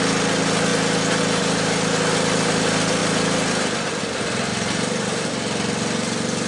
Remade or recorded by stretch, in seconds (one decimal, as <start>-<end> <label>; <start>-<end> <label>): 0.0-4.5 recorded; 4.5-5.2 remade; 5.2-6.5 recorded